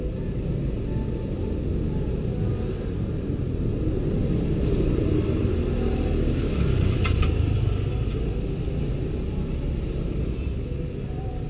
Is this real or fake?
real